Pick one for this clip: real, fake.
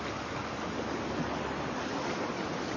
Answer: real